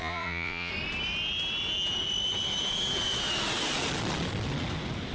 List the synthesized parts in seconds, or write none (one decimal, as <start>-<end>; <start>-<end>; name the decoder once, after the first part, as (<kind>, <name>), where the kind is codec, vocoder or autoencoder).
0.0-0.7 (vocoder, Vocos)